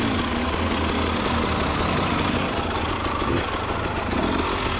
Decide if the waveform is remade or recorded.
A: recorded